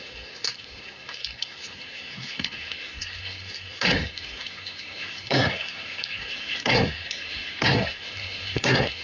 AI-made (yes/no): yes